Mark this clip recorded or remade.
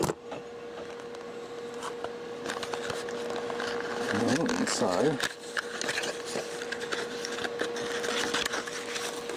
recorded